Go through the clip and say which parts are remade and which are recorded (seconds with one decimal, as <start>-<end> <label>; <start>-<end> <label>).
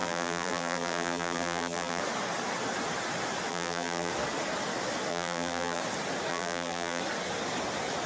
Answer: 0.0-2.0 remade; 2.0-3.5 recorded; 3.5-4.1 remade; 4.1-5.1 recorded; 5.1-5.8 remade; 5.8-6.3 recorded; 6.3-7.0 remade; 7.0-8.1 recorded